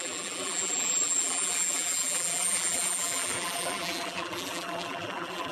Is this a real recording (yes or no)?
no